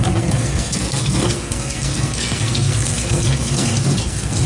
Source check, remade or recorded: remade